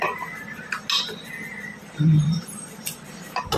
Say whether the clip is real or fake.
real